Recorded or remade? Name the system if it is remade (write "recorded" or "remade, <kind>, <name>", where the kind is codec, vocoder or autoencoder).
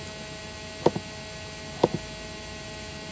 recorded